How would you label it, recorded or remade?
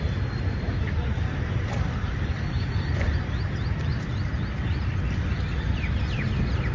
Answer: recorded